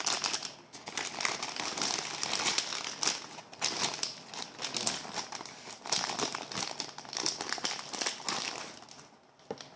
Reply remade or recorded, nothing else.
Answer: recorded